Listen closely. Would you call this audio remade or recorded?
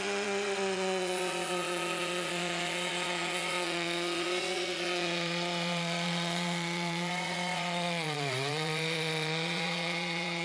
remade